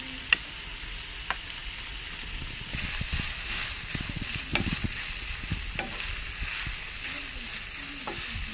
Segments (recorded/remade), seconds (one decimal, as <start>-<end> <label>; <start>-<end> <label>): 0.0-8.5 recorded